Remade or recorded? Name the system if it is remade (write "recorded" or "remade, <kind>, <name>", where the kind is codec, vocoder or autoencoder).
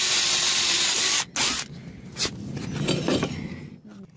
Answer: recorded